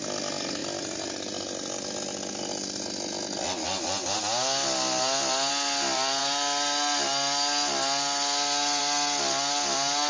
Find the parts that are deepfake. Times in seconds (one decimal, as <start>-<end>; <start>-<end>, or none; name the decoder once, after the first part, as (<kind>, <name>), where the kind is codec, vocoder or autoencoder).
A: none